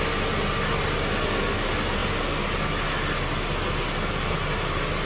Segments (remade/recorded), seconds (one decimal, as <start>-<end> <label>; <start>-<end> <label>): 0.0-5.1 recorded